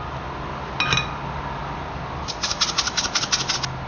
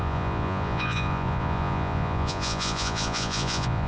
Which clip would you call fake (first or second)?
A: second